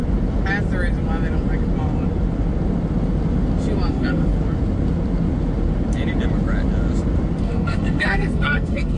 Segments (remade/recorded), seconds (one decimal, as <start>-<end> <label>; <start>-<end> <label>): 0.0-3.9 recorded; 3.9-4.3 remade; 4.3-7.4 recorded; 7.4-9.0 remade